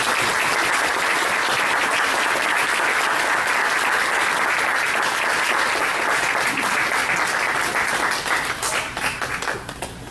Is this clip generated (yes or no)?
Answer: no